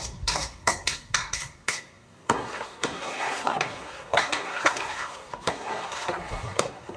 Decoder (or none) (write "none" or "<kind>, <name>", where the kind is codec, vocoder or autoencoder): codec, SNAC